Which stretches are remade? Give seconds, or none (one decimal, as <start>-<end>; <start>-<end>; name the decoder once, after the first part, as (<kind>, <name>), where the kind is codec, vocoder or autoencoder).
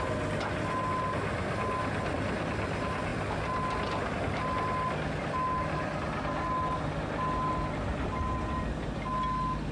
none